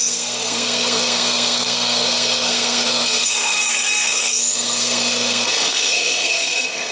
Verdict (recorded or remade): remade